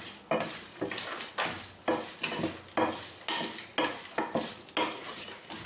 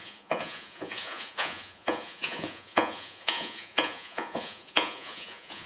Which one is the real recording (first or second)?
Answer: first